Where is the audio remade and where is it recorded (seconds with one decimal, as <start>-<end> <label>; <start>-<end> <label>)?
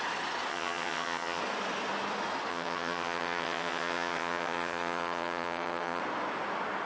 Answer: 0.0-0.5 recorded; 0.5-1.4 remade; 1.4-2.5 recorded; 2.5-6.0 remade; 6.0-6.9 recorded